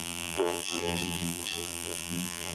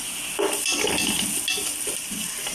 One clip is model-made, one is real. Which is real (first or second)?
second